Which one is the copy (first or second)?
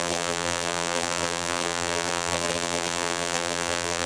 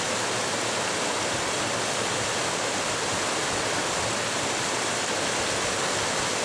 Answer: first